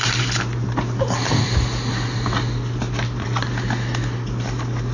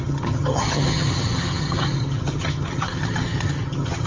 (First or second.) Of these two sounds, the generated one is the second